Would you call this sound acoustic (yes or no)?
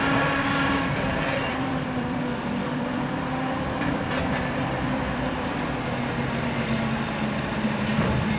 no